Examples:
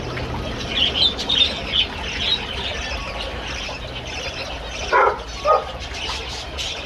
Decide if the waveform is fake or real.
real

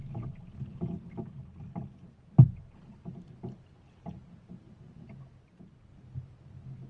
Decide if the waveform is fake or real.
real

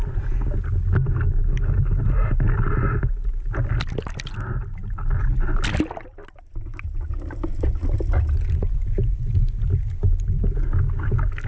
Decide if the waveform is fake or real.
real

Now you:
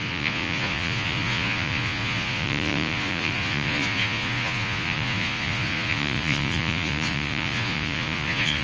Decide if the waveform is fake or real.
fake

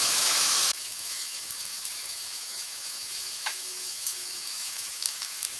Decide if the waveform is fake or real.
fake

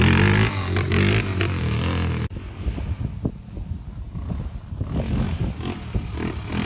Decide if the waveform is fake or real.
real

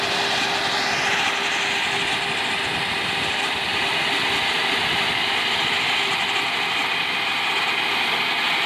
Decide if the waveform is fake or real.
real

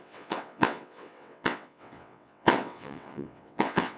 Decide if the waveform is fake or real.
fake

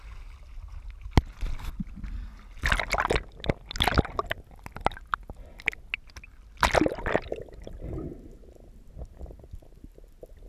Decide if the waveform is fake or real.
real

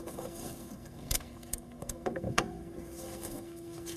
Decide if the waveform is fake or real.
fake